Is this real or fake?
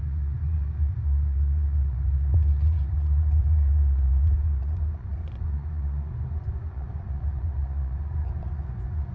fake